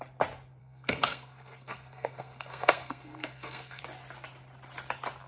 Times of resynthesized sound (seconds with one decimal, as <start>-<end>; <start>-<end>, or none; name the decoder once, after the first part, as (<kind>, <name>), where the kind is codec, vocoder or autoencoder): 0.6-3.8 (codec, SNAC)